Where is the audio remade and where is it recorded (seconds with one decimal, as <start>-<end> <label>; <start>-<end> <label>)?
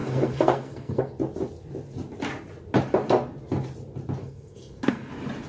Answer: 0.0-1.1 remade; 1.1-4.2 recorded; 4.2-5.1 remade; 5.1-5.5 recorded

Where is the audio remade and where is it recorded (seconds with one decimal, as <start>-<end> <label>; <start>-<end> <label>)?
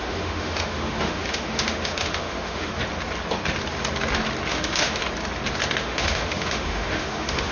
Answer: 0.0-2.7 remade; 2.7-4.5 recorded; 4.5-5.0 remade; 5.0-5.8 recorded; 5.8-7.5 remade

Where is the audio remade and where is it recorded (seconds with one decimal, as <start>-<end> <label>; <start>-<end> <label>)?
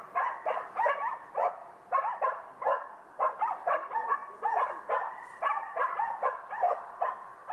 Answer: 0.0-7.5 recorded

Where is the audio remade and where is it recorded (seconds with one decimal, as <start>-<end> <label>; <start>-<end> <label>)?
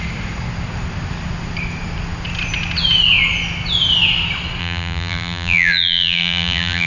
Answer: 0.0-4.6 recorded; 4.6-6.9 remade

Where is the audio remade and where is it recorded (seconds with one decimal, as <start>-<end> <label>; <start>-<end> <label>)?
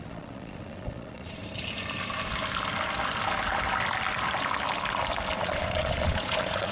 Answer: 0.0-1.4 remade; 1.4-5.4 recorded; 5.4-6.7 remade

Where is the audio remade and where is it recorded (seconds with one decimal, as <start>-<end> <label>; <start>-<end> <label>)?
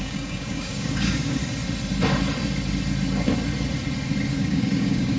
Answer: 0.0-1.4 remade; 1.4-4.3 recorded; 4.3-5.2 remade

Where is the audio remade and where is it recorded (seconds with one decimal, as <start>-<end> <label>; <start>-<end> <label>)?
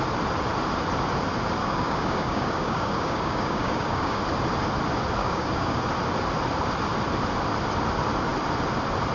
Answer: 0.0-1.6 recorded; 1.6-4.2 remade; 4.2-5.2 recorded; 5.2-5.8 remade; 5.8-9.1 recorded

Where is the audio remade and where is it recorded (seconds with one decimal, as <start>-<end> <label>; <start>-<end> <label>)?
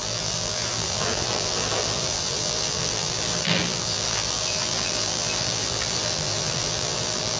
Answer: 0.0-7.4 remade